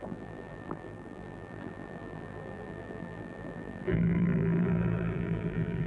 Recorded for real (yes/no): no